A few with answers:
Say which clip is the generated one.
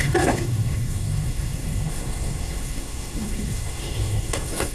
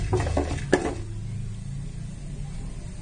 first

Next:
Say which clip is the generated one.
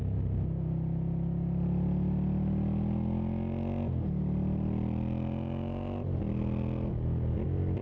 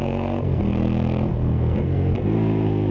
second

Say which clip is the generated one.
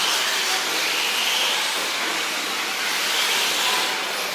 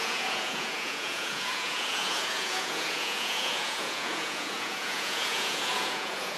second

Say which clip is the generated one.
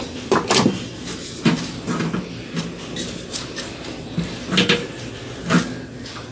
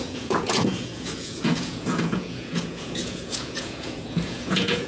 second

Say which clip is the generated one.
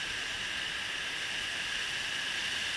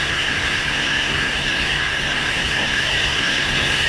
second